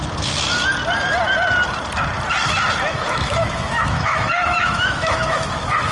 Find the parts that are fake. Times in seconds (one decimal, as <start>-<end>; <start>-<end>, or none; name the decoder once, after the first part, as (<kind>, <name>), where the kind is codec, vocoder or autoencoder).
2.9-5.9 (autoencoder, DAC-VAE)